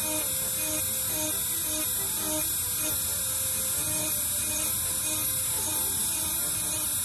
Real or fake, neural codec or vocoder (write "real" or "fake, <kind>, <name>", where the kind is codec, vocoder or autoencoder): real